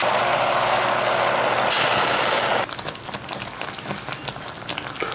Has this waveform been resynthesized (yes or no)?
no